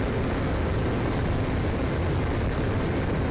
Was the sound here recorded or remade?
recorded